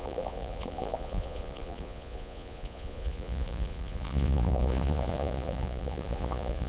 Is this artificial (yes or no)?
yes